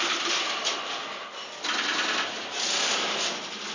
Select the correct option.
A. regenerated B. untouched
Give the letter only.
B